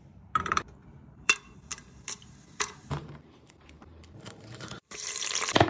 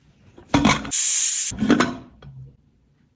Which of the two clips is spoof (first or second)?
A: first